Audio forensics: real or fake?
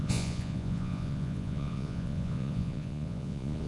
fake